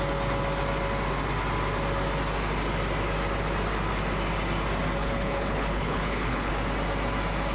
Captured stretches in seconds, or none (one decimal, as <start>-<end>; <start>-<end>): 0.0-5.0; 6.5-7.5